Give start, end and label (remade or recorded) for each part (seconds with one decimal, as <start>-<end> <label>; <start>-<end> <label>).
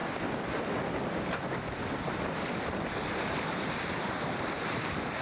0.0-3.1 recorded; 3.1-5.2 remade